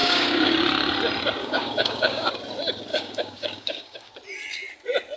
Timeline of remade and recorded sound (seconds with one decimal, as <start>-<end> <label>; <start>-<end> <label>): 0.0-0.5 remade; 0.5-1.4 recorded; 1.4-2.3 remade; 2.3-2.9 recorded; 2.9-4.1 remade; 4.1-5.2 recorded